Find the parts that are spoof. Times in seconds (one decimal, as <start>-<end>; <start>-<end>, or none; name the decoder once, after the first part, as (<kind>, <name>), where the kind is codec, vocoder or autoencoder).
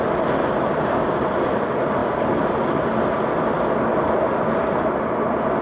none